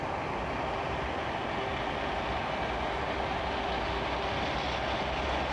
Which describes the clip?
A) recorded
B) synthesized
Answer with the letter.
A